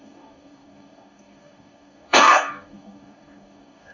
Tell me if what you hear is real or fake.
fake